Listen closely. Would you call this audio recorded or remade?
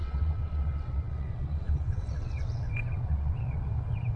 remade